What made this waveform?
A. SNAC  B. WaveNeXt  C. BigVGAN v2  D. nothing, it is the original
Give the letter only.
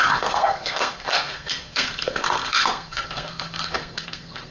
A